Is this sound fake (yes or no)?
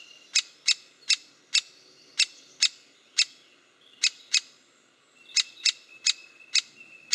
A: no